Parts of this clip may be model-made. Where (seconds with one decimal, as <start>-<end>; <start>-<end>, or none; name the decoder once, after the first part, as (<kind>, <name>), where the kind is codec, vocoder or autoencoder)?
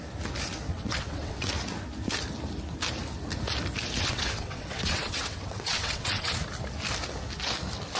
0.7-1.5 (vocoder, WaveNeXt); 4.0-6.4